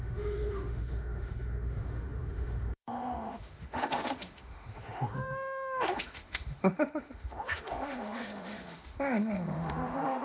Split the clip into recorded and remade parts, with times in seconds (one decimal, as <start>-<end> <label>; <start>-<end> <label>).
0.0-10.2 remade